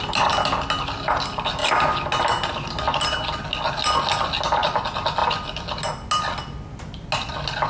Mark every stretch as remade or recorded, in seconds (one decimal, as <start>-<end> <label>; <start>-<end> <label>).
0.0-7.7 recorded